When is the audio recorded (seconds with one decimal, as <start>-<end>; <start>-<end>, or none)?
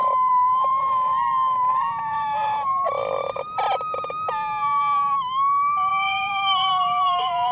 2.7-5.9